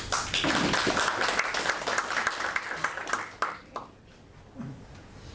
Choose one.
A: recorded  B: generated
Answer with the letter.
A